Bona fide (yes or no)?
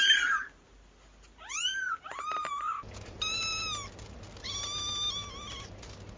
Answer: yes